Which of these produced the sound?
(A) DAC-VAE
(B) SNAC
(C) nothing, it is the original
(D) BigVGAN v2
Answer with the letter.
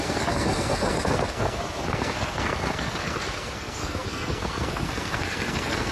B